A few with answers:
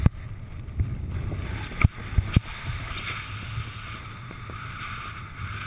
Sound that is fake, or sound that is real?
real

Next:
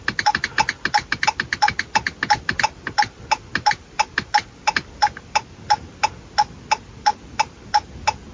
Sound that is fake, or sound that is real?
real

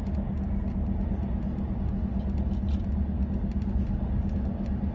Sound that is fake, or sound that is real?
real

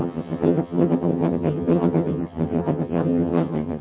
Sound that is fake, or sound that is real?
fake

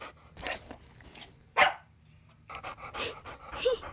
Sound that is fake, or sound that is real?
real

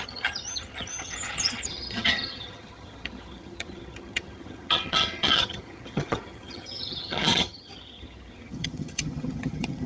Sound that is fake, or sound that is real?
fake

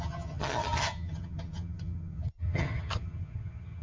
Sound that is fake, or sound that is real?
fake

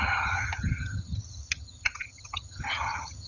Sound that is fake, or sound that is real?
fake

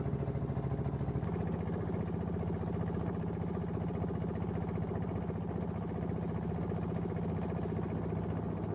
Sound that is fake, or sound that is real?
real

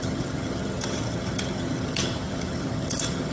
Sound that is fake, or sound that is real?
fake